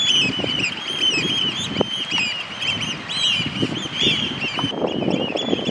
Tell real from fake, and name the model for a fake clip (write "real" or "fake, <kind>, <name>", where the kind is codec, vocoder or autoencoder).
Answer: real